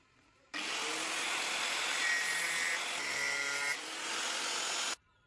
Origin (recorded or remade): recorded